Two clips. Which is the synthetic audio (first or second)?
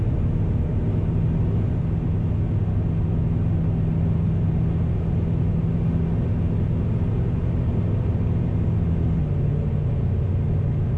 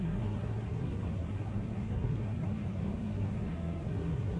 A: second